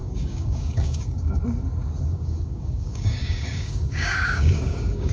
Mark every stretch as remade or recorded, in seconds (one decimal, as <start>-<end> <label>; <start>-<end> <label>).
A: 0.0-1.4 remade; 1.4-2.1 recorded; 2.1-5.1 remade